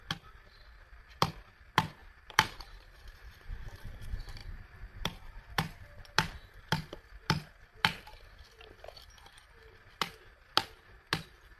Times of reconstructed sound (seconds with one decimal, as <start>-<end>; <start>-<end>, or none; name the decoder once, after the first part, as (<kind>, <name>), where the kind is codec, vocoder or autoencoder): 2.0-3.8 (vocoder, BigVGAN v2)